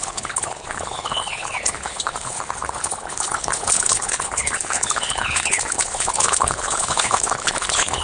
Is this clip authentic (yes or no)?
no